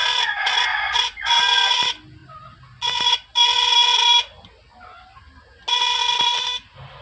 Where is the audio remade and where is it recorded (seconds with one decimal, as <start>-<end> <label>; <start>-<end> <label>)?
0.0-0.7 recorded; 0.7-1.4 remade; 1.4-7.0 recorded